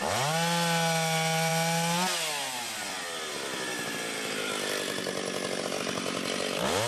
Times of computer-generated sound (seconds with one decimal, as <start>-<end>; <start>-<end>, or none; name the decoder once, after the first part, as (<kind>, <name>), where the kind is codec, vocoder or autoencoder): none